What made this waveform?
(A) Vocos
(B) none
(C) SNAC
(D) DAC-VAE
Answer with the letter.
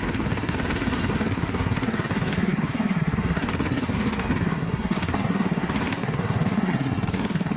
C